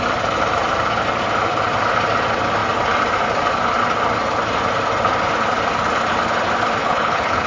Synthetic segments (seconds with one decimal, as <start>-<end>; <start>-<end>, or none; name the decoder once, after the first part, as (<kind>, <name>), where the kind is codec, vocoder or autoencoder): 6.8-7.5 (codec, HILCodec)